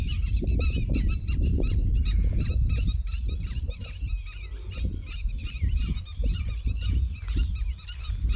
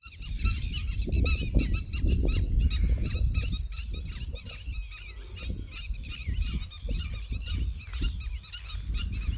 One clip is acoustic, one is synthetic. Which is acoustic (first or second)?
second